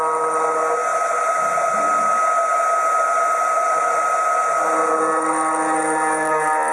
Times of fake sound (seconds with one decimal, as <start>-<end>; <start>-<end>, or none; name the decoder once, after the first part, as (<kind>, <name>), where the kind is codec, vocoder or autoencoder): none